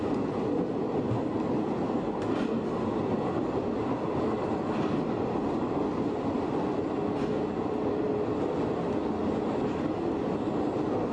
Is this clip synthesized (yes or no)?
no